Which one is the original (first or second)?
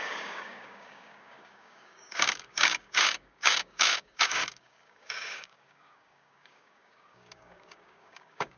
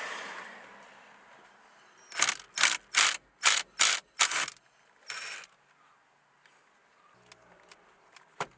second